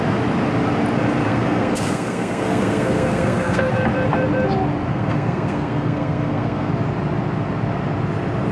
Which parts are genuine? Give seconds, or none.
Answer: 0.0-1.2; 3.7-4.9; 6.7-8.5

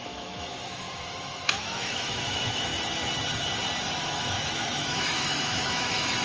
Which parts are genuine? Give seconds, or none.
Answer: 2.7-3.9

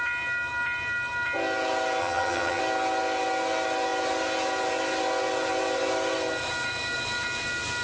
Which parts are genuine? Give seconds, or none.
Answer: 0.0-2.0; 2.6-7.8

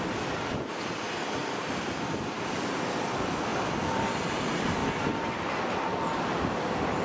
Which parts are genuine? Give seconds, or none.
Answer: 0.0-1.4; 2.9-3.5; 4.0-4.8; 5.6-7.0

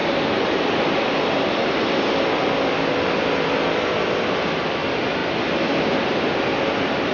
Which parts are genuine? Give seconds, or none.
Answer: 0.0-5.2; 6.6-7.1

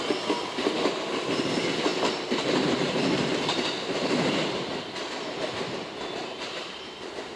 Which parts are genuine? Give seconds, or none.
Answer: 0.0-1.9; 4.3-6.2

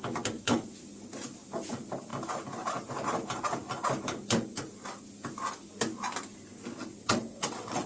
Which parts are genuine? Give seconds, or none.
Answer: 0.0-6.9

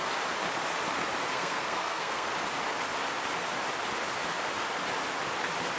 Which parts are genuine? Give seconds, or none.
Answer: 0.0-1.3; 2.3-5.8